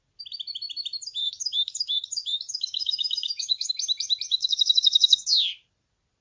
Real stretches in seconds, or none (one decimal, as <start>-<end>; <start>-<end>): 0.0-1.2; 3.7-4.3; 5.5-6.2

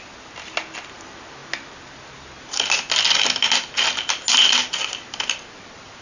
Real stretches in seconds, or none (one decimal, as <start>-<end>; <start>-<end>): 0.0-6.0